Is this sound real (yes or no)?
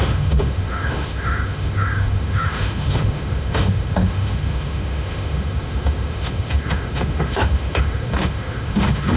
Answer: no